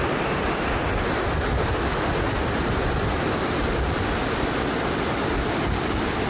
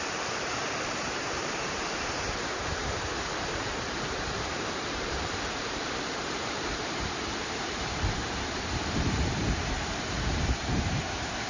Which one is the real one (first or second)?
first